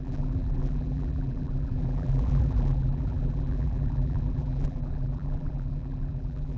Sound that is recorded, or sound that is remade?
remade